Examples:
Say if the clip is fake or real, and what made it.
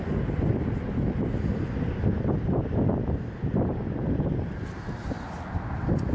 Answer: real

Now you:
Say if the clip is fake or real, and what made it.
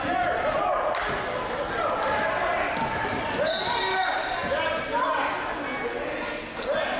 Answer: real